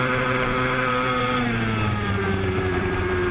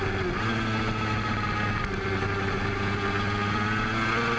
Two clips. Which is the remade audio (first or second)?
first